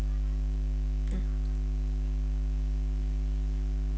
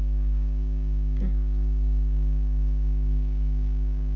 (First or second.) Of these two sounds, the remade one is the second